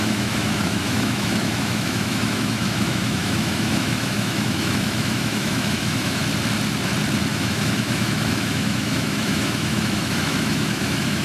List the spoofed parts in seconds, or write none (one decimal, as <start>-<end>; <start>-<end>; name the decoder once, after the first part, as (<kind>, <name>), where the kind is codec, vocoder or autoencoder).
0.0-6.2 (autoencoder, DAC-VAE); 7.3-11.2